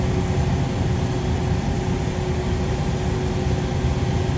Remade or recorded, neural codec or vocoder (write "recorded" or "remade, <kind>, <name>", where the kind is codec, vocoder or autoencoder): recorded